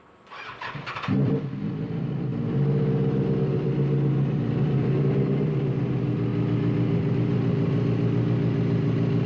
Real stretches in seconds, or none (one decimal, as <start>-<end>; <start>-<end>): 0.0-0.7